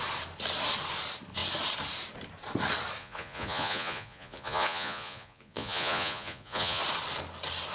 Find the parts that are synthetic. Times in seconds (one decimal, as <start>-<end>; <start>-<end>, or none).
3.0-6.8